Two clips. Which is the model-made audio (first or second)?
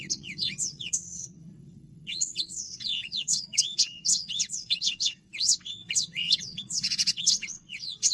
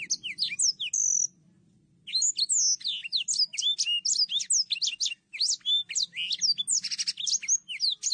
first